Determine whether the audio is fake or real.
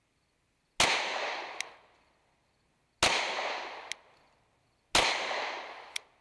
real